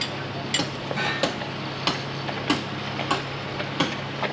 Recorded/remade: recorded